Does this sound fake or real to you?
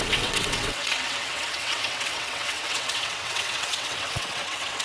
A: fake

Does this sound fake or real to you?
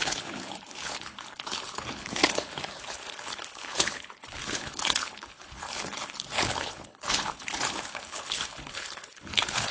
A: fake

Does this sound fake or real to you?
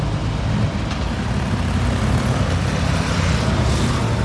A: real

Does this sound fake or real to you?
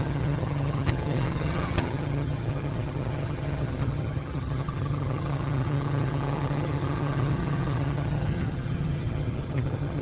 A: fake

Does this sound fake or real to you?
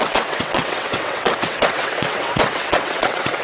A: fake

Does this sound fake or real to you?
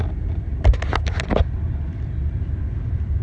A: fake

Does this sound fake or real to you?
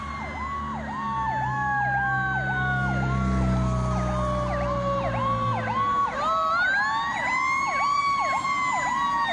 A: real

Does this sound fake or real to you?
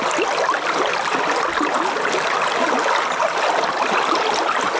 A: real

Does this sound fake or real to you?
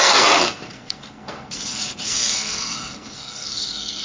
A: fake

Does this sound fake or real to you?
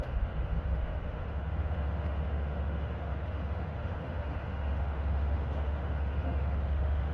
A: fake